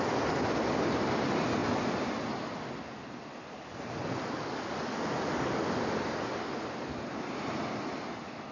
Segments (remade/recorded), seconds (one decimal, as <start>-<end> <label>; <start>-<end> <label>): 0.0-8.5 recorded